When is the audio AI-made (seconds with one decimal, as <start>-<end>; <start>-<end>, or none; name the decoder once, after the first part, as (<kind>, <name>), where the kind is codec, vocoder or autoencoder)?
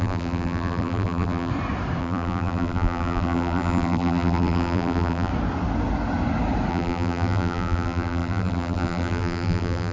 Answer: 0.0-1.5 (vocoder, BigVGAN v2); 2.0-5.3; 6.7-9.9